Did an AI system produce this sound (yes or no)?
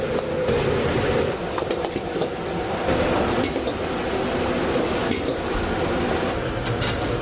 no